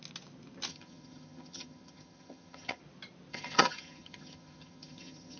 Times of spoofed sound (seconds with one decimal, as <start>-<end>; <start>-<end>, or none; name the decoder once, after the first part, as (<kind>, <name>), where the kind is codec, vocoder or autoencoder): 0.7-2.8 (vocoder, HiFi-GAN); 3.3-5.4